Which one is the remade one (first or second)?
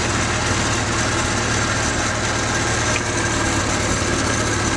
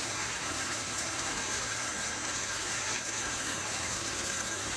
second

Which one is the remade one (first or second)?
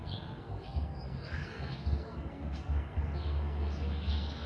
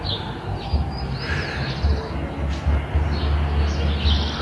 first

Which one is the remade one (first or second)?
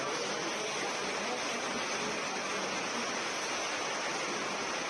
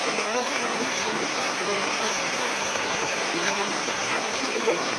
second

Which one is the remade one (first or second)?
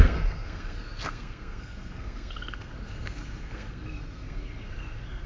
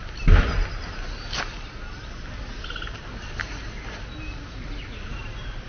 first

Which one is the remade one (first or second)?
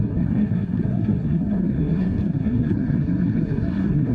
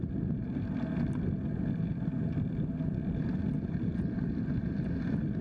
first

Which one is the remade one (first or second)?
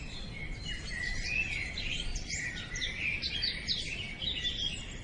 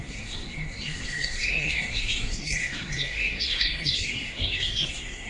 second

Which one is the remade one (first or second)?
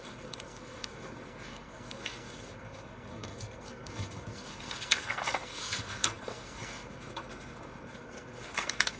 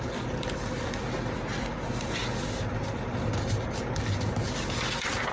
first